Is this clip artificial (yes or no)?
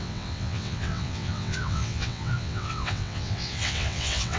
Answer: yes